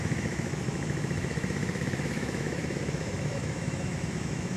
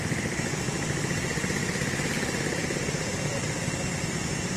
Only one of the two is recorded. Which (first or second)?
second